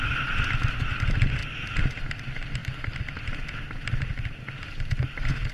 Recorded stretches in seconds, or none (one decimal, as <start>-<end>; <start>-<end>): 0.0-5.5